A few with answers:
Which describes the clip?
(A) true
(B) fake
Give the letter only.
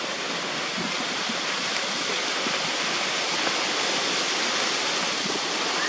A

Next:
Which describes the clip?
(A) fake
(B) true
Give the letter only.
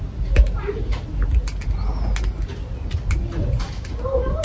B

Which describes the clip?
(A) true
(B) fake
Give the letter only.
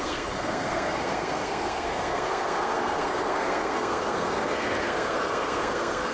B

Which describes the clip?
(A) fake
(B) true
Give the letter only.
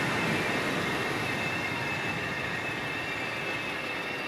B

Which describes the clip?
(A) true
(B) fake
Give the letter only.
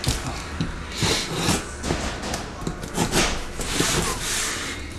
A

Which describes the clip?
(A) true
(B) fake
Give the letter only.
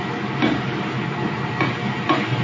A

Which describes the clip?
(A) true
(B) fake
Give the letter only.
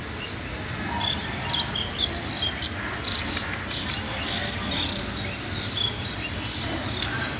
A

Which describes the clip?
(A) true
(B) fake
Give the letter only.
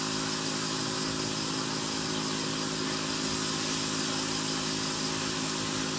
A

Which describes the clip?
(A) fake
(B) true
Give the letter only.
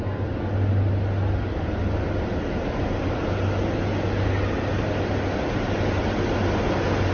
B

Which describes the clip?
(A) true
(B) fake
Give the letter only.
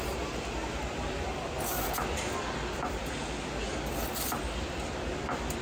A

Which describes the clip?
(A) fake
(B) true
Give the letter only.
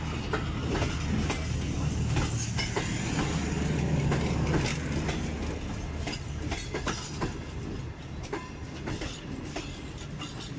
B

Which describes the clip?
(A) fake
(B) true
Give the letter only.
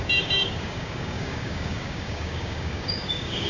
A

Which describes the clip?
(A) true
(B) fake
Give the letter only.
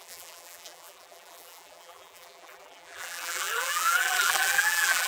B